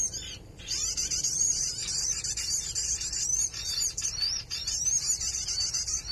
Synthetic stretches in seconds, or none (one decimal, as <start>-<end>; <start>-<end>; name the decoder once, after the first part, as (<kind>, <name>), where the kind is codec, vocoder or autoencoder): 0.0-1.8 (vocoder, BigVGAN v2); 5.5-6.1